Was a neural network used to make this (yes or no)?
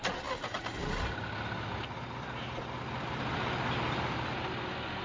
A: no